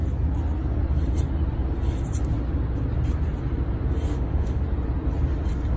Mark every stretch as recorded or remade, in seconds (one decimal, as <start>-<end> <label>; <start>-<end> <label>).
0.0-4.1 recorded; 4.1-4.6 remade; 4.6-5.8 recorded